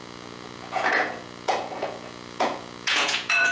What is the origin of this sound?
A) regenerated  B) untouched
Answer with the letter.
A